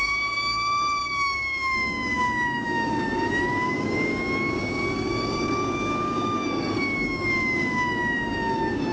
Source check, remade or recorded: remade